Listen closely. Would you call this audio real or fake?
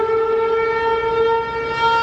real